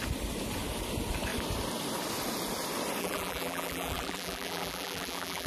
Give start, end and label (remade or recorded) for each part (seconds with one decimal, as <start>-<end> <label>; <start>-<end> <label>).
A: 0.0-3.0 recorded; 3.0-5.5 remade